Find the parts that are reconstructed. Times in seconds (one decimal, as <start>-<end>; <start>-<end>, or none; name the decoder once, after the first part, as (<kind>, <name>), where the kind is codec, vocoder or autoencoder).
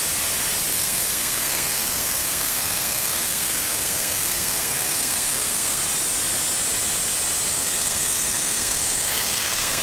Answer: 0.7-5.8 (codec, SNAC); 7.5-9.8